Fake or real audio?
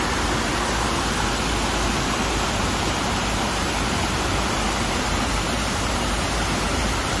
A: fake